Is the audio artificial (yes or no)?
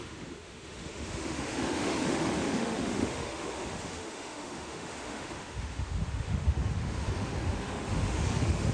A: yes